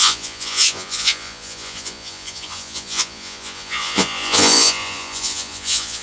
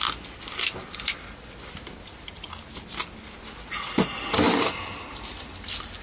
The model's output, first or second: first